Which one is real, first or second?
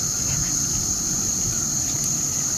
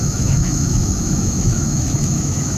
first